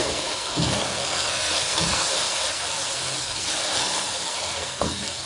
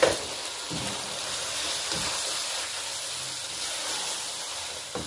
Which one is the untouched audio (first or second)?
second